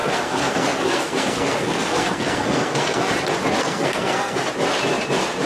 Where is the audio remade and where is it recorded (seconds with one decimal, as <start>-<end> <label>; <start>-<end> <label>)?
0.0-3.1 remade; 3.1-3.6 recorded; 3.6-4.5 remade; 4.5-5.5 recorded

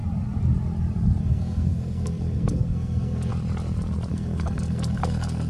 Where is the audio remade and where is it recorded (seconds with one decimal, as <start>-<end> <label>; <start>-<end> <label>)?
0.0-1.2 recorded; 1.2-3.3 remade; 3.3-4.1 recorded; 4.1-5.5 remade